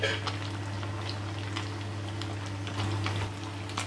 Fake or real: real